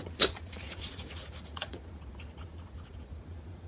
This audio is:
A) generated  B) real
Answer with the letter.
A